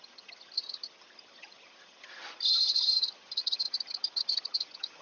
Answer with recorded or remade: remade